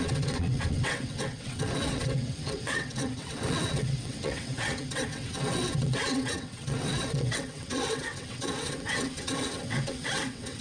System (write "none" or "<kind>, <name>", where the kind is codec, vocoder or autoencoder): vocoder, WaveNeXt